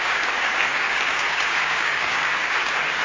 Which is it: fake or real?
fake